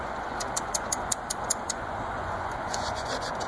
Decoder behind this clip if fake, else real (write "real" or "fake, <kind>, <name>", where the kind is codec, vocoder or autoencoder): fake, vocoder, Vocos